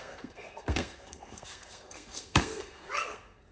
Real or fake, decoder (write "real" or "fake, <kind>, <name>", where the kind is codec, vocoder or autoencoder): fake, codec, SNAC